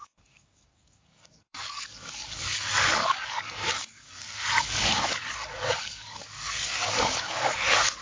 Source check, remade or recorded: remade